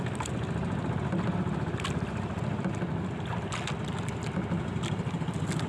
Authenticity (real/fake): real